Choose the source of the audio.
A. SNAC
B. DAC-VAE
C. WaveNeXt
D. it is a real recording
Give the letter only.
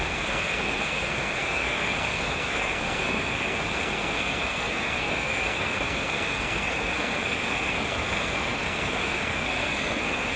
A